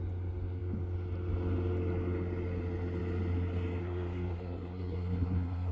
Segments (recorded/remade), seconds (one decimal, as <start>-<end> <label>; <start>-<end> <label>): 0.0-3.8 recorded; 3.8-5.7 remade